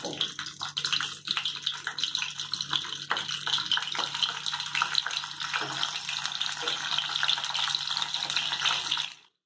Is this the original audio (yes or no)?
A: yes